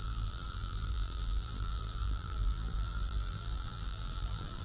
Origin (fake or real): fake